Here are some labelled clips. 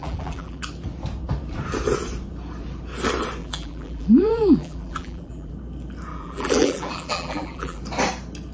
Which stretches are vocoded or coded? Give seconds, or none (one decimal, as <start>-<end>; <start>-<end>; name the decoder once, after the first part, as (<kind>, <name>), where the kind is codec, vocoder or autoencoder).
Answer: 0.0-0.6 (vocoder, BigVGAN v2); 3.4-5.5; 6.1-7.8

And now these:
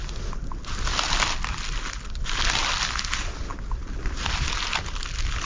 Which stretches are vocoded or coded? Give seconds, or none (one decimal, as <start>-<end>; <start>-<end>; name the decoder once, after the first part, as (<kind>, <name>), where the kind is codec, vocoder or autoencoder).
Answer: none

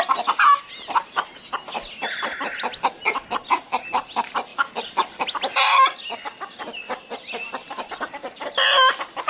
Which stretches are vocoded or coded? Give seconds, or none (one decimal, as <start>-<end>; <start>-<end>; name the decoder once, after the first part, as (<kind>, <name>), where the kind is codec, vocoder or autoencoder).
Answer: none

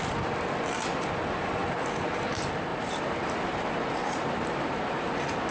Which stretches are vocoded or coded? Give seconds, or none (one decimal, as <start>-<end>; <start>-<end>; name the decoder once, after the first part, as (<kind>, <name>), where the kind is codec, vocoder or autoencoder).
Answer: 2.7-5.1 (vocoder, BigVGAN v2)